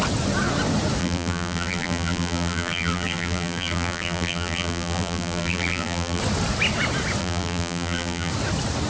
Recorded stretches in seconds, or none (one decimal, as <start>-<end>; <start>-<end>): 0.0-1.0; 6.2-7.2; 8.3-8.9